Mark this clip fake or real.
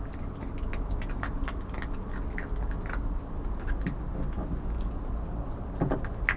real